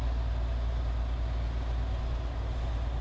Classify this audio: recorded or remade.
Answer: recorded